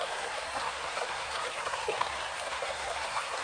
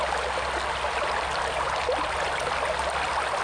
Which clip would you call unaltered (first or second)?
second